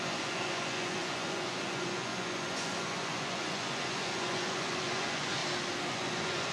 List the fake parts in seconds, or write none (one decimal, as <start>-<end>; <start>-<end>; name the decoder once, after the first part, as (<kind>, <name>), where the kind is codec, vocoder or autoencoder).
0.0-5.4 (vocoder, Vocos); 5.9-6.5